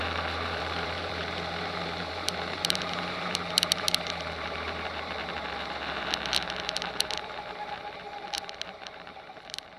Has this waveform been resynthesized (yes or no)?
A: yes